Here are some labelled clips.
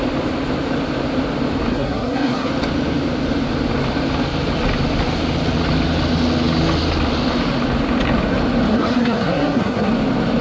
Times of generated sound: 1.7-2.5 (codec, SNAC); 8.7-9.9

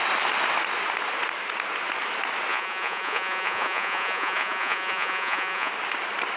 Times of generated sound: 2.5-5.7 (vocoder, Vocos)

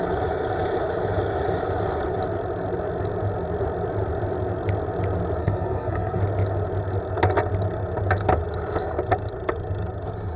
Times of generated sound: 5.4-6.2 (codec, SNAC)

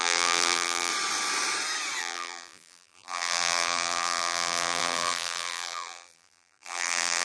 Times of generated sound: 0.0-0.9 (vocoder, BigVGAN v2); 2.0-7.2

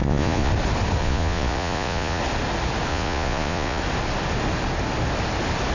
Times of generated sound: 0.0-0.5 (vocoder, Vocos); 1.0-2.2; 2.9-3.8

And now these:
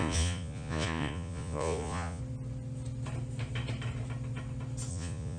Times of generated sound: 0.0-2.2 (vocoder, Vocos); 4.9-5.4